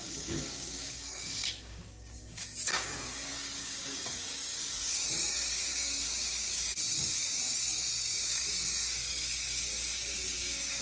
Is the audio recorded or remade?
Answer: remade